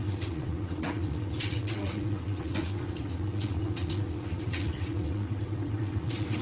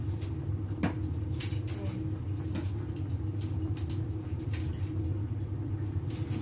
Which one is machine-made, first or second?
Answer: first